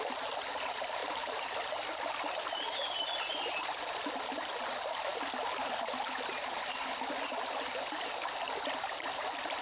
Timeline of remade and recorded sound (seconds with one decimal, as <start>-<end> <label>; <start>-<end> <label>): 0.0-9.6 recorded